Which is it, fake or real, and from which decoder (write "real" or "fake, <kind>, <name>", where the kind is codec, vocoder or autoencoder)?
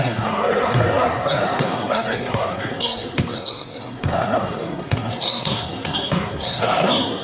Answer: fake, codec, SNAC